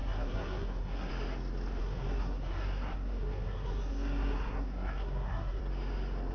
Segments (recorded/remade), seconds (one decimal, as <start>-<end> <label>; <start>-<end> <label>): 0.0-1.1 remade; 1.1-1.8 recorded; 1.8-5.6 remade; 5.6-6.3 recorded